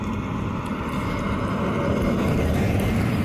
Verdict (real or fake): real